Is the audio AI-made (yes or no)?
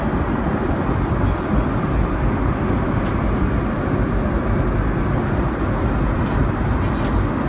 no